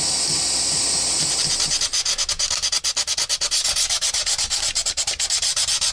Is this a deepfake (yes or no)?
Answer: no